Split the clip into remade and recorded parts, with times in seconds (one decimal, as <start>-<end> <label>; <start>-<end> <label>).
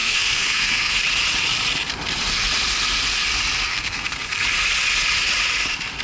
0.0-1.0 remade; 1.0-3.7 recorded; 3.7-4.3 remade; 4.3-6.0 recorded